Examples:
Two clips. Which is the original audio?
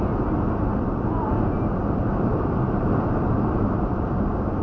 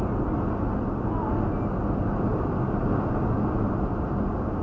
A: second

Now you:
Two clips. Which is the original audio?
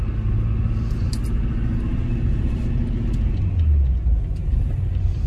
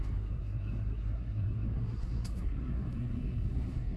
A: first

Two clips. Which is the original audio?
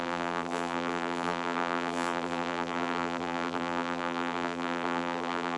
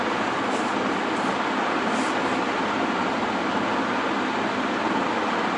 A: second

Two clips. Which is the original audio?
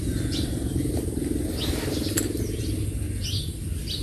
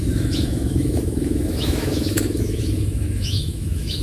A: first